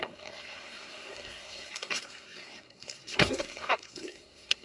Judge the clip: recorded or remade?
remade